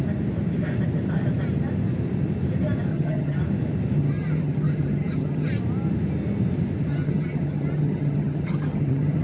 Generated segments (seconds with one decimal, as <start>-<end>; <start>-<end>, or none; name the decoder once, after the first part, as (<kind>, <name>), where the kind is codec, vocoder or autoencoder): 2.9-3.4 (vocoder, HiFi-GAN); 4.0-5.5; 6.9-9.2